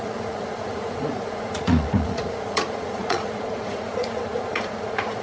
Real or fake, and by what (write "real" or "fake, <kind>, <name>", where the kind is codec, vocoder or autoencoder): fake, vocoder, Vocos